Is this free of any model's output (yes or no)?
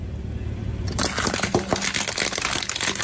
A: yes